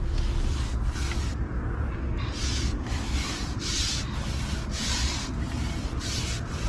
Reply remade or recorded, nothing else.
recorded